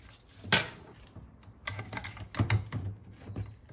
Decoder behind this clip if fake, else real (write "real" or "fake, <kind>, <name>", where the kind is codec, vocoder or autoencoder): real